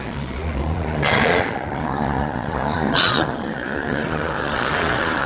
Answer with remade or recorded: remade